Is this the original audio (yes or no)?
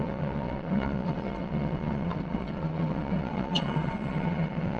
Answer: no